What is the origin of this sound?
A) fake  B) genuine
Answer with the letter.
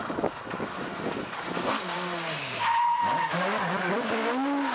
B